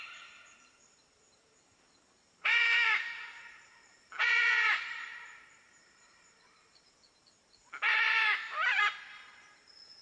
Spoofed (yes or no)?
yes